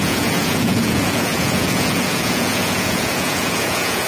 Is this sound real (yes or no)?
no